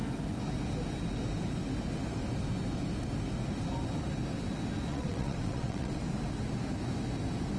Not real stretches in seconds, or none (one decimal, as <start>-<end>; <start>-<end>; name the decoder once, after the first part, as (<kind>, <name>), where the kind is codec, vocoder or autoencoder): 4.9-6.0 (vocoder, WaveNeXt)